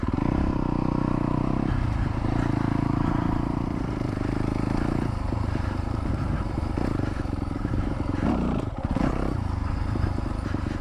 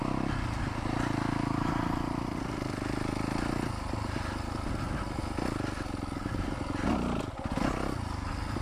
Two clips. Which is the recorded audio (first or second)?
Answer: second